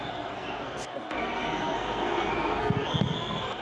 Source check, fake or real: fake